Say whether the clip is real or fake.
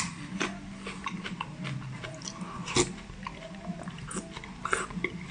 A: real